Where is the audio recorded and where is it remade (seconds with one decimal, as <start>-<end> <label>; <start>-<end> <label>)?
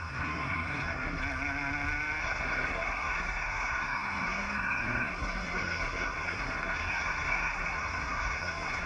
0.0-1.2 remade; 1.2-2.2 recorded; 2.2-8.9 remade